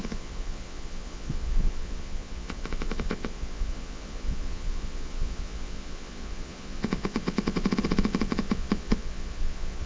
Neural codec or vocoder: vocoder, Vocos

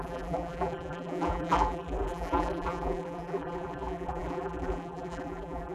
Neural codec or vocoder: vocoder, BigVGAN v2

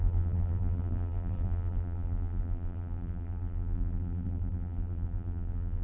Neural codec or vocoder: vocoder, BigVGAN v2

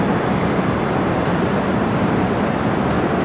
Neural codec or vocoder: none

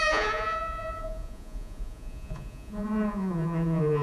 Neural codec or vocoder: vocoder, Vocos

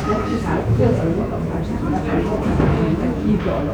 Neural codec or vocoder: autoencoder, DAC-VAE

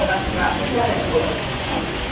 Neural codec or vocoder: vocoder, Vocos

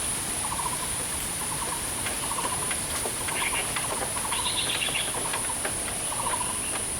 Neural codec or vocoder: vocoder, BigVGAN v2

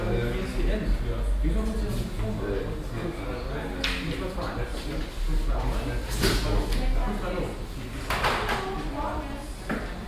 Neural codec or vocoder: none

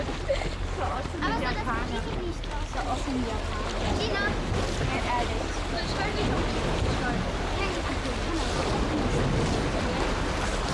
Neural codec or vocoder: none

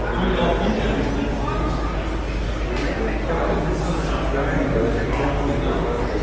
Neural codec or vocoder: none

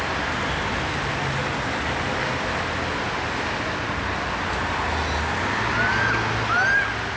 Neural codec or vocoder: none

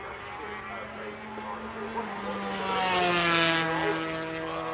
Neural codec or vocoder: none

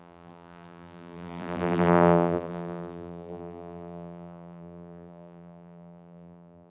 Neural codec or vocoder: vocoder, BigVGAN v2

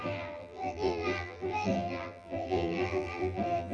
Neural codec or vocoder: vocoder, BigVGAN v2